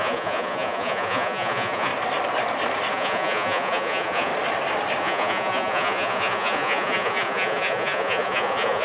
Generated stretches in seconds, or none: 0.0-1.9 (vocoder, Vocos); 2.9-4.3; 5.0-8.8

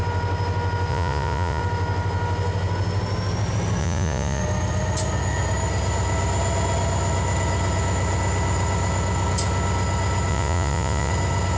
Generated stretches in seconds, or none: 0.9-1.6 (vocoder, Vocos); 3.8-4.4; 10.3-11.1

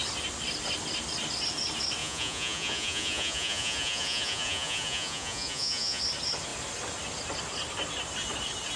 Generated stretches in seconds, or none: 2.0-6.0 (vocoder, Vocos)

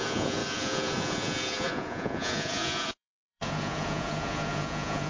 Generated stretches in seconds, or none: 0.0-5.1 (vocoder, Vocos)